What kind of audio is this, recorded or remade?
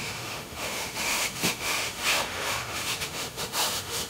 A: remade